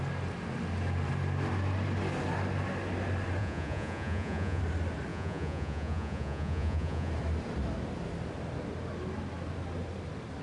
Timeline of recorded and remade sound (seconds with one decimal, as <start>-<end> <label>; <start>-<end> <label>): 0.0-3.4 recorded; 3.4-4.6 remade; 4.6-5.1 recorded; 5.1-7.1 remade; 7.1-10.4 recorded